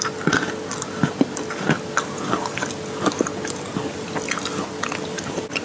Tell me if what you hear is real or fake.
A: real